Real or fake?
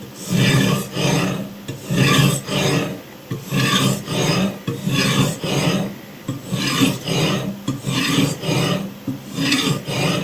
real